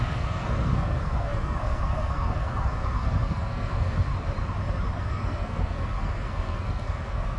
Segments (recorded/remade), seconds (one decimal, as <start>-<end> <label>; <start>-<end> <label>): 0.0-4.1 remade; 4.1-5.0 recorded; 5.0-7.4 remade